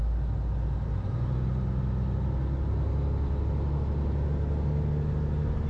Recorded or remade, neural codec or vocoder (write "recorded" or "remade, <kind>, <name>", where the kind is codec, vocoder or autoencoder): recorded